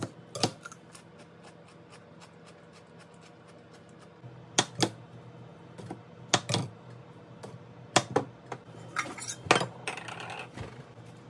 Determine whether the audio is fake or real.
real